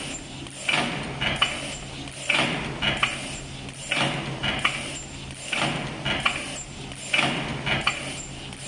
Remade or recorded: recorded